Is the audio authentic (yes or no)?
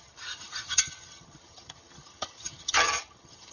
no